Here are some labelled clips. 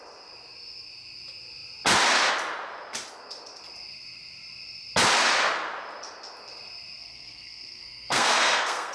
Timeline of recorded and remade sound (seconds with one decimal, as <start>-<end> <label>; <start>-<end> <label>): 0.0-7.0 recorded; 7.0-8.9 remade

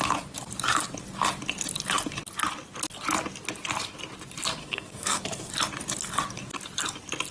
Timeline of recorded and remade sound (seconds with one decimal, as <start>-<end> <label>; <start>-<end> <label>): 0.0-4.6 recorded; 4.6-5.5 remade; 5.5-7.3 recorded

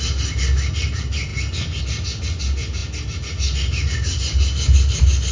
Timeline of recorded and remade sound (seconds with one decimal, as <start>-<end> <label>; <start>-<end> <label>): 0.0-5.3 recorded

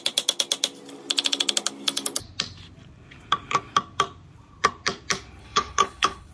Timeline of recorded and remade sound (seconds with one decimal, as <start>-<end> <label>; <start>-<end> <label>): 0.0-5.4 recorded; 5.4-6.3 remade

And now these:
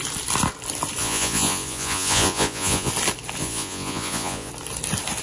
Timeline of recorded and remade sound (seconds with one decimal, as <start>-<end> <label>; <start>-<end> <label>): 0.0-1.0 recorded; 1.0-2.9 remade; 2.9-3.4 recorded; 3.4-4.5 remade; 4.5-5.2 recorded

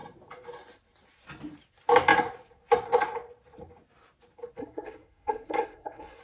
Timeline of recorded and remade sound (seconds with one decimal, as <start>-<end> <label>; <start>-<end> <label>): 0.0-4.6 recorded; 4.6-6.2 remade